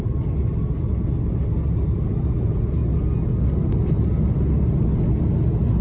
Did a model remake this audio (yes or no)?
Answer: no